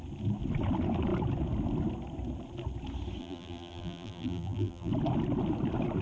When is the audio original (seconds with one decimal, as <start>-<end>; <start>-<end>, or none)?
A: 0.0-3.2; 4.9-6.0